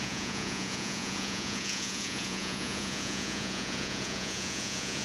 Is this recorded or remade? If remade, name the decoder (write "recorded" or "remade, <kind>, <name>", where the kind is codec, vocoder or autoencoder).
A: remade, vocoder, Vocos